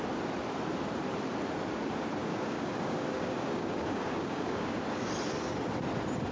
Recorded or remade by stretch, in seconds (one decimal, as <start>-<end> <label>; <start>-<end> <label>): 0.0-2.2 recorded; 2.2-4.8 remade; 4.8-6.3 recorded